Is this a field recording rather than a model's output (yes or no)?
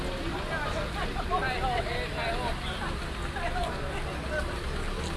yes